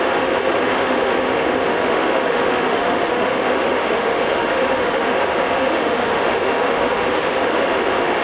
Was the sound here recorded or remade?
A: remade